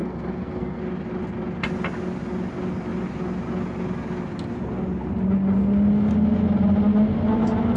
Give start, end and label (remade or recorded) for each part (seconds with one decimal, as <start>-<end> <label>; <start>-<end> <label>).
0.0-0.8 remade; 0.8-7.8 recorded